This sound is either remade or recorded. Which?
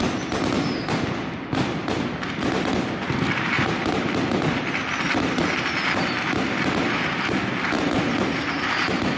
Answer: recorded